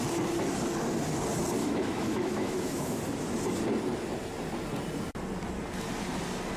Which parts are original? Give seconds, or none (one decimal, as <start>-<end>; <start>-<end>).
0.0-1.6; 3.0-6.6